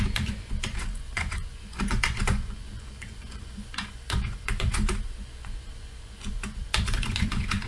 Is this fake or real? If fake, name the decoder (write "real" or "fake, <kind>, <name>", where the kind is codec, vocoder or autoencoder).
fake, vocoder, Vocos